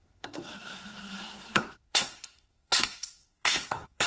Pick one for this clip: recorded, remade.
remade